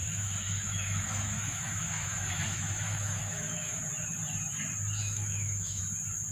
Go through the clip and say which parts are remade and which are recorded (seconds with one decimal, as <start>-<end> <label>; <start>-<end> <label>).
0.0-3.8 remade; 3.8-5.0 recorded; 5.0-5.8 remade; 5.8-6.3 recorded